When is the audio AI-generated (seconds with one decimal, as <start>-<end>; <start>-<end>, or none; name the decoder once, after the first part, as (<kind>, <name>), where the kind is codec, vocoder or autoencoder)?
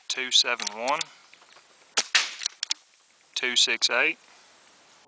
3.3-4.1 (vocoder, BigVGAN v2)